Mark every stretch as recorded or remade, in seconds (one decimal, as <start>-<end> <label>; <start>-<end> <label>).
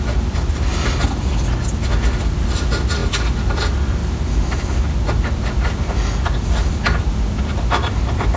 0.0-8.4 recorded